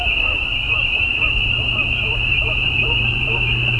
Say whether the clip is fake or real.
fake